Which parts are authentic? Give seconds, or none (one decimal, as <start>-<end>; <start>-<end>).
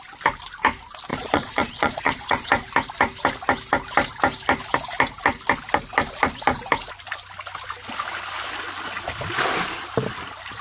0.0-1.1; 2.5-10.6